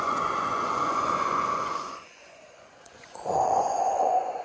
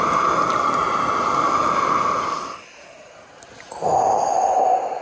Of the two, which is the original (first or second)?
second